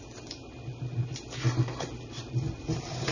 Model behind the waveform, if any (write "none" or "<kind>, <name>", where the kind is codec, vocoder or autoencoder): none